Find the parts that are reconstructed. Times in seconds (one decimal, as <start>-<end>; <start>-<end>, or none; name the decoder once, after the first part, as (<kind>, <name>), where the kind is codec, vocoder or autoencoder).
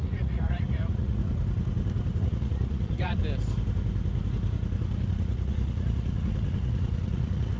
0.0-1.2 (vocoder, Vocos); 2.2-3.2; 5.1-7.6